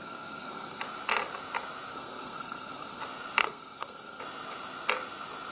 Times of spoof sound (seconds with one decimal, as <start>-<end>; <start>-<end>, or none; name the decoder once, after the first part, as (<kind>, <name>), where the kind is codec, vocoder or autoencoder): 0.0-0.8 (codec, SNAC); 1.9-3.0; 3.4-4.2